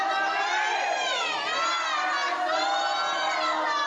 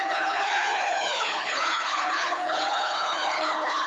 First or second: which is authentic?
first